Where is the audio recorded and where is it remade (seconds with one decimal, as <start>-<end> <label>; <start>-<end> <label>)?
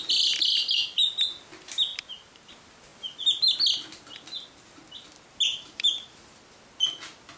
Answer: 0.0-1.9 recorded; 1.9-2.5 remade; 2.5-5.5 recorded; 5.5-6.2 remade; 6.2-7.4 recorded